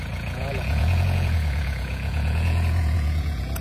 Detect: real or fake fake